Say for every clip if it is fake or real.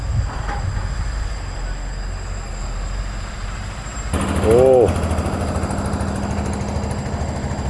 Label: real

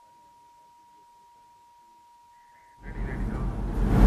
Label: real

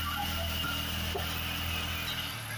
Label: real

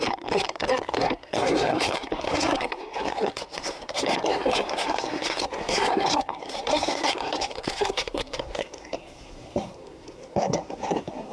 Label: fake